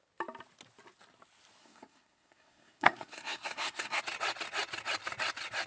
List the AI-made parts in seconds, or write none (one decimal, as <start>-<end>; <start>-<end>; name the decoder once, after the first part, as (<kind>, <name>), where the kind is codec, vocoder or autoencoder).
1.6-4.0 (codec, SNAC)

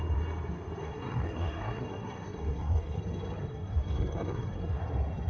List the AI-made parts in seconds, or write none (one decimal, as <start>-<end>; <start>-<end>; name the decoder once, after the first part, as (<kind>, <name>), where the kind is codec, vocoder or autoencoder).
0.8-3.0 (codec, SNAC); 3.5-4.8